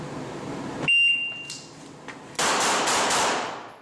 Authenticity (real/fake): real